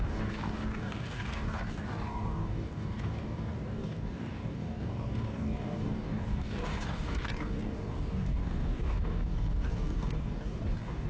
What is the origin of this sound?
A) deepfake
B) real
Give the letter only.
A